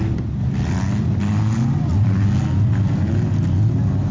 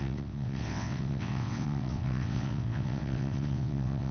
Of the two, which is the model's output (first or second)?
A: second